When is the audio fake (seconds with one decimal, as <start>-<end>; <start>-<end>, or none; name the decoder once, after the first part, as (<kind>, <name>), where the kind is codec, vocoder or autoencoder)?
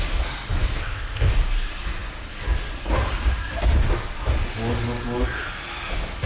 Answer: 0.8-1.3 (codec, ZipCodec)